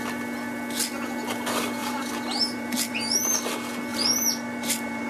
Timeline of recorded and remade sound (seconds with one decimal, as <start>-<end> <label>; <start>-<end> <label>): 0.0-1.8 recorded; 1.8-3.4 remade; 3.4-3.9 recorded; 3.9-5.1 remade